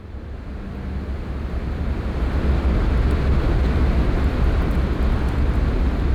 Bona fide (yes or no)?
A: yes